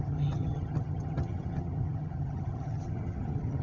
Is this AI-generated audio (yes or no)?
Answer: yes